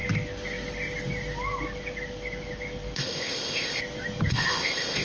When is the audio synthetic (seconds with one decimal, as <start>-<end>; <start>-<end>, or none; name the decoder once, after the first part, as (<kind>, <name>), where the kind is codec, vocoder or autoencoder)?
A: 3.0-3.8 (codec, ZipCodec); 4.3-5.0